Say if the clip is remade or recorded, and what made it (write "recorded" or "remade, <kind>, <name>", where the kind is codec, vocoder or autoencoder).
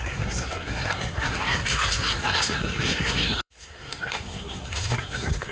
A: remade, codec, SNAC